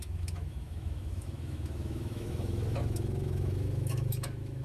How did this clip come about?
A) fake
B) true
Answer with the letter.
A